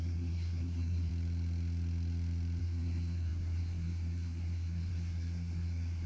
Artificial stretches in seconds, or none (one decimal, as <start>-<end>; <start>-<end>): 0.0-1.1; 2.6-6.1